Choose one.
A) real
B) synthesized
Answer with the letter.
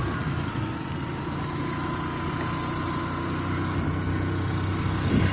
A